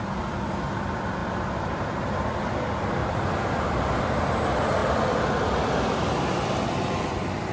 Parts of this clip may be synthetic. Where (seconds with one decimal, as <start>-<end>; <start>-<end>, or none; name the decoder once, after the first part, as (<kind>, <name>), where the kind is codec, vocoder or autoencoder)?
none